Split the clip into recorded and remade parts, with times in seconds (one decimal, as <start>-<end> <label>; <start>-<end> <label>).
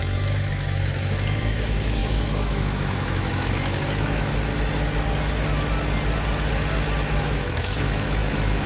0.0-4.3 remade; 4.3-7.2 recorded; 7.2-8.7 remade